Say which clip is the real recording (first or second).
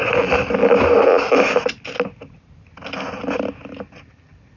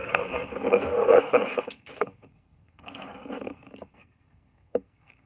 first